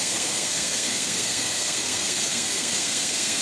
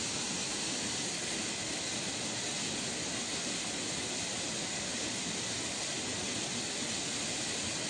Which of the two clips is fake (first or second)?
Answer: first